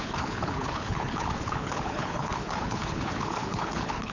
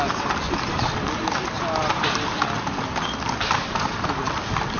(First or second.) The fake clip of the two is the first